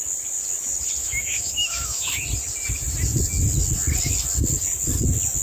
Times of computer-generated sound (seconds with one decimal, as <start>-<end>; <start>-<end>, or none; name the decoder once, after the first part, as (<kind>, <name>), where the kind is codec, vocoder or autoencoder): 1.0-2.2 (autoencoder, DAC-VAE)